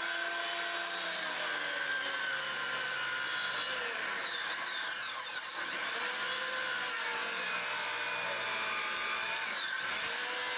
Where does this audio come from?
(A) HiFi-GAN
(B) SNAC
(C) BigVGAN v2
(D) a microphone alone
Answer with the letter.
D